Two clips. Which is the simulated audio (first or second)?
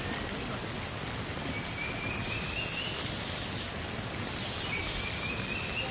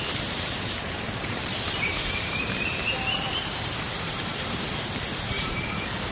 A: second